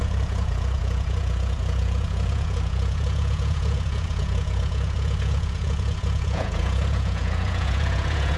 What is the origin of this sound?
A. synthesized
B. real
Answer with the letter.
A